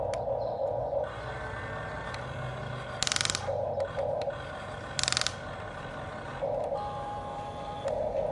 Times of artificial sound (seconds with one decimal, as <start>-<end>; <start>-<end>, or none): 0.6-1.3